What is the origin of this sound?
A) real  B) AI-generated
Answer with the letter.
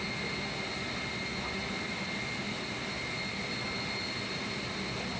A